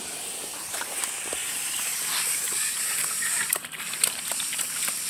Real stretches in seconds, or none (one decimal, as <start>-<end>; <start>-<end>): 0.0-1.4; 3.9-5.1